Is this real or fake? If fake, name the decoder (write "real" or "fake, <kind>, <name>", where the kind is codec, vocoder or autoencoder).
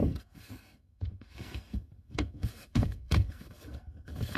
fake, codec, SNAC